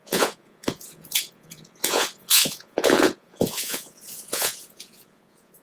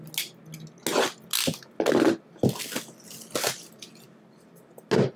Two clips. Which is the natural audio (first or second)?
second